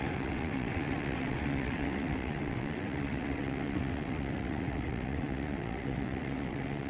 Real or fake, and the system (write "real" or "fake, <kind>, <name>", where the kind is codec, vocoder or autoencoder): fake, vocoder, WaveNeXt